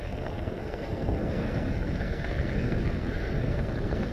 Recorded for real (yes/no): no